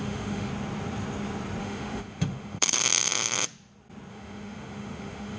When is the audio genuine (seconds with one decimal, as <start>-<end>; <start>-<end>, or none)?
0.5-1.6; 2.8-4.1